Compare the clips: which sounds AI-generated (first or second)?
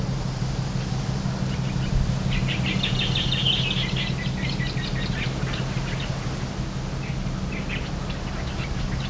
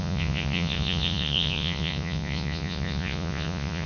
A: second